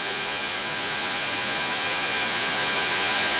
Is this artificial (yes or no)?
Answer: yes